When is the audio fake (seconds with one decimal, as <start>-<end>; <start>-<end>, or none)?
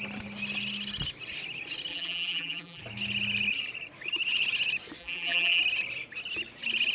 1.9-2.8; 5.0-5.6